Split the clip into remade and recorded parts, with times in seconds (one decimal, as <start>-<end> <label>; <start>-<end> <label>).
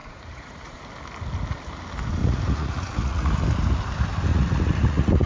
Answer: 0.0-0.8 remade; 0.8-2.2 recorded; 2.2-3.3 remade; 3.3-4.3 recorded; 4.3-5.3 remade